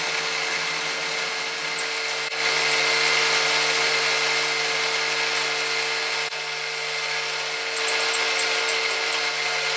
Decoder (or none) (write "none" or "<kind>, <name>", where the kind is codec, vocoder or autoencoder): none